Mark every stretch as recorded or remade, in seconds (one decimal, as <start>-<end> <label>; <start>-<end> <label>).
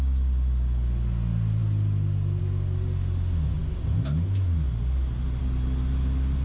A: 0.0-6.4 recorded